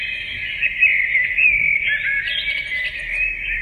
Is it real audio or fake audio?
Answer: real